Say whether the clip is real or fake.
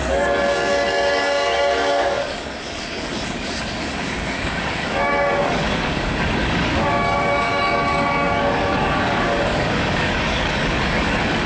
fake